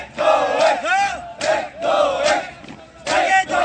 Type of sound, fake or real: real